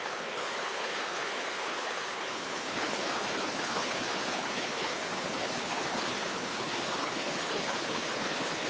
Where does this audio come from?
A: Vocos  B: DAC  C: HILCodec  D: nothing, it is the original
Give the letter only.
C